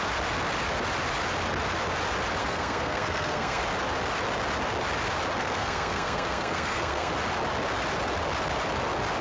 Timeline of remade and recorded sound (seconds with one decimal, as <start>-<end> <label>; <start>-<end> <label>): 0.0-2.4 recorded; 2.4-3.6 remade; 3.6-5.4 recorded; 5.4-7.1 remade; 7.1-9.2 recorded

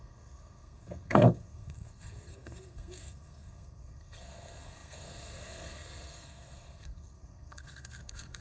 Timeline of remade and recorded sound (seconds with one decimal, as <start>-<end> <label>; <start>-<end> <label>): 0.0-8.4 remade